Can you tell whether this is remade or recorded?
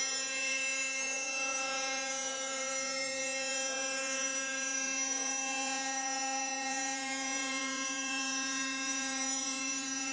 remade